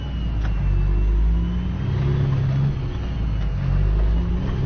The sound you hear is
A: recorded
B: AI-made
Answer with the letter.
A